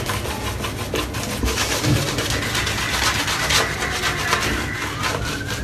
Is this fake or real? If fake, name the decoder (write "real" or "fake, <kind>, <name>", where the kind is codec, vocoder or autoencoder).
real